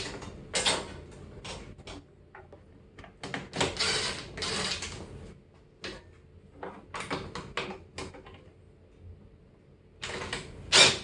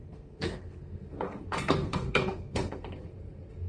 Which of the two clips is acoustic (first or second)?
first